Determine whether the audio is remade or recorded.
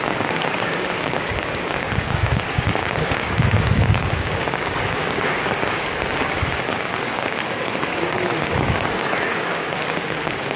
remade